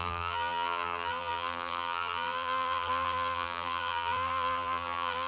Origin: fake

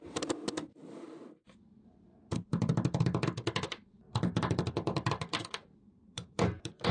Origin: fake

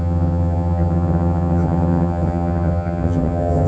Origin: fake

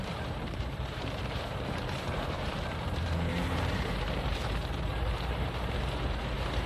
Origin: fake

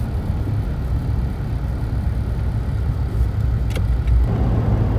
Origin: real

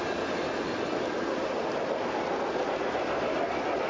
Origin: real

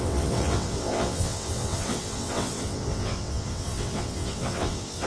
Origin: fake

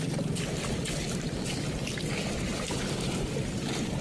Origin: real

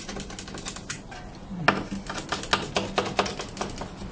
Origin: real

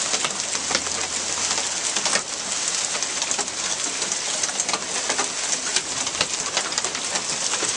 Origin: real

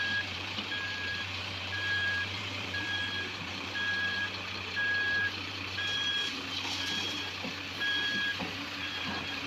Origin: fake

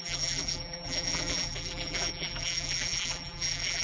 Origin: fake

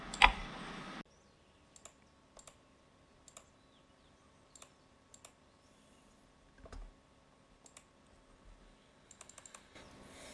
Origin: real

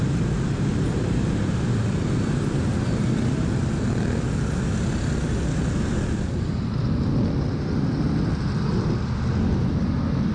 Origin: real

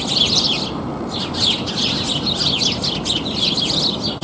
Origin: real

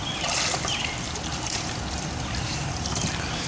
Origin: fake